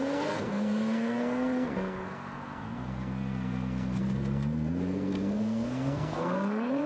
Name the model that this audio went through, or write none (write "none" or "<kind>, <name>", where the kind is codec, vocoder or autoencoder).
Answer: codec, SNAC